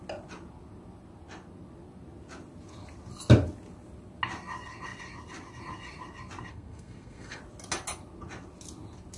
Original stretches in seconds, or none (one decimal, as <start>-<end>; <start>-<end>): 0.0-6.5; 7.4-9.2